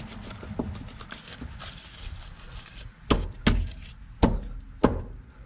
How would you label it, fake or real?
real